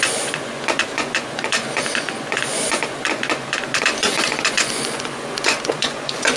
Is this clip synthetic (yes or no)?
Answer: yes